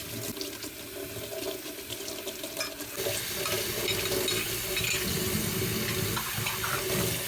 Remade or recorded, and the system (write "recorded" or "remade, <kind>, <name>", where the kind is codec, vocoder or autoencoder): recorded